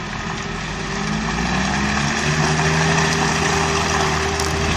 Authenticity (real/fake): real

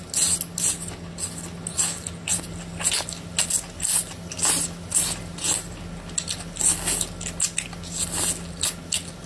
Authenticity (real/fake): real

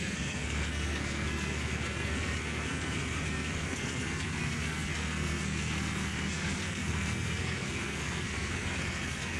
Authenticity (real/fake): fake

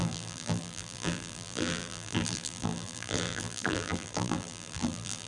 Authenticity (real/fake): fake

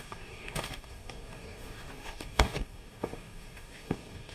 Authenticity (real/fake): fake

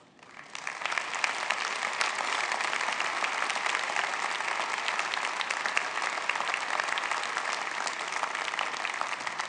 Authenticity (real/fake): real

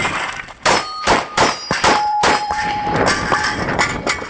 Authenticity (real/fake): fake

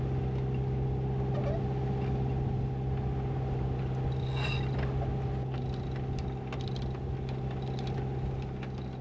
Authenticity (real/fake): real